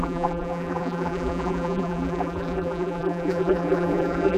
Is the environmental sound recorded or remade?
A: remade